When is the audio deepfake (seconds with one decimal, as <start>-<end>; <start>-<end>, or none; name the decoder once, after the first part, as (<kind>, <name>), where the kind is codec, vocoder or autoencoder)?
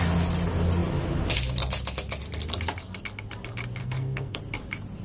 3.8-4.4 (codec, SNAC)